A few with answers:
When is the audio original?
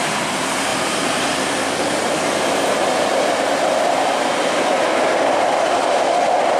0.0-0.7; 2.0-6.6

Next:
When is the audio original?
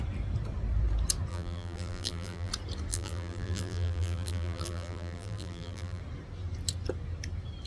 0.0-1.3; 2.5-2.9; 6.0-7.7